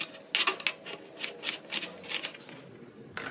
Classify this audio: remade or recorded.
recorded